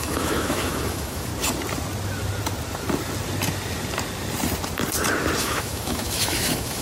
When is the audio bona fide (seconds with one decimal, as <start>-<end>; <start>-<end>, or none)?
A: 1.3-5.4